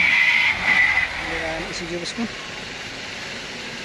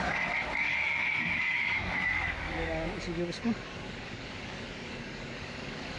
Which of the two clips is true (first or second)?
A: first